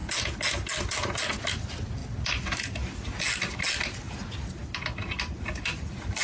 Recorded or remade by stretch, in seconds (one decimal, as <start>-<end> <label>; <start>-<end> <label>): 0.0-6.2 recorded